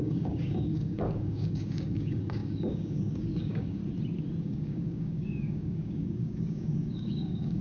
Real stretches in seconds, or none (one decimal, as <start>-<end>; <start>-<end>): 3.8-4.4